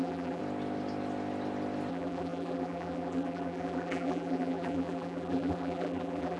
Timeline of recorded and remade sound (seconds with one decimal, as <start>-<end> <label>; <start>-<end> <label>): 0.0-0.4 remade; 0.4-1.9 recorded; 1.9-6.4 remade